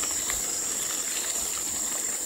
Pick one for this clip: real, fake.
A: fake